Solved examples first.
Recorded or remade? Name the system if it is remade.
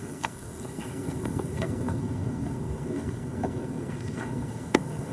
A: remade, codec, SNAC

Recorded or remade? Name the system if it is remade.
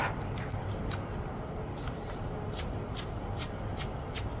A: recorded